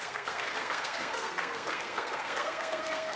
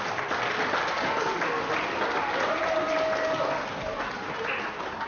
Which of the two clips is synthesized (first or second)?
first